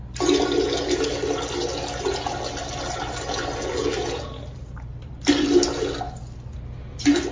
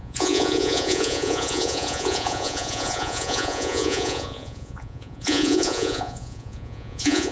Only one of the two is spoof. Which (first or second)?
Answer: second